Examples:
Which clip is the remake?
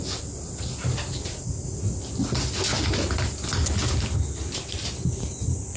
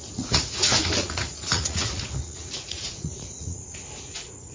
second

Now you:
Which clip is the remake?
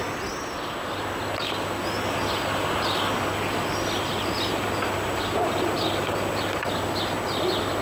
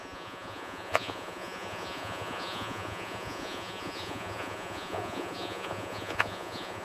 second